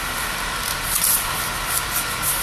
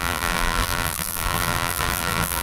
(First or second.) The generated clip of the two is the second